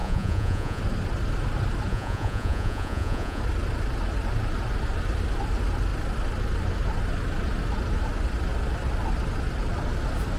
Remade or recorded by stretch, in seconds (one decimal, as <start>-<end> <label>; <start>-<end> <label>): 0.0-0.8 remade; 0.8-1.9 recorded; 1.9-3.4 remade; 3.4-10.4 recorded